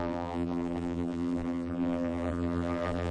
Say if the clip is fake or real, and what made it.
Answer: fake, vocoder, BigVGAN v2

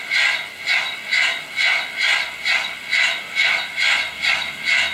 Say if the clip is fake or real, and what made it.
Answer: real